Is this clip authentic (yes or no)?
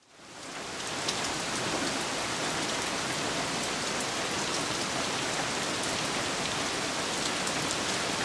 yes